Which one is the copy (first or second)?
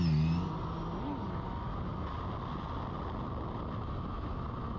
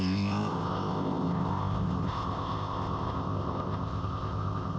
second